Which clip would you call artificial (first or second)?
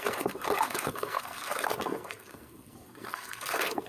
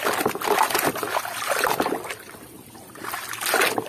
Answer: first